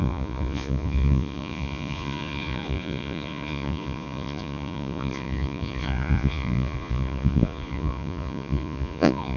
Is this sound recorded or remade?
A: remade